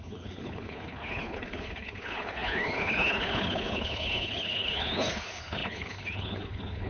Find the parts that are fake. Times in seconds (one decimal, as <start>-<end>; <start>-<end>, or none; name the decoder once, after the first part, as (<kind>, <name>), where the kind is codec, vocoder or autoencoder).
0.0-6.9 (codec, HILCodec)